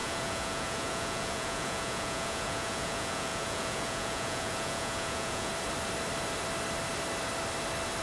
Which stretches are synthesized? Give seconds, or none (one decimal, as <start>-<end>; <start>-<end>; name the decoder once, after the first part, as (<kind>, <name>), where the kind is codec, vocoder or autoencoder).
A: 0.0-5.5 (vocoder, Vocos)

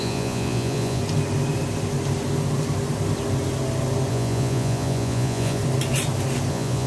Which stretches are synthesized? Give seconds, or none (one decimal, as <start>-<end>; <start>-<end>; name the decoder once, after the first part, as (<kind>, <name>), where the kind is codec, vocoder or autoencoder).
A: 0.0-1.0 (vocoder, Vocos); 4.1-5.6; 6.5-6.9

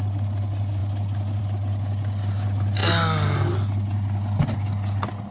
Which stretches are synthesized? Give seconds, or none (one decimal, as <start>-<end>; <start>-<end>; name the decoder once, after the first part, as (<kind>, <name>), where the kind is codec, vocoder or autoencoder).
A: none